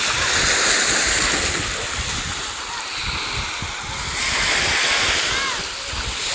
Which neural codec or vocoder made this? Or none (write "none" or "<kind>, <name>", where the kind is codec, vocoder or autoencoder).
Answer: none